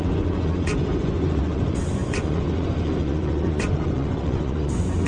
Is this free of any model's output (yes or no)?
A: no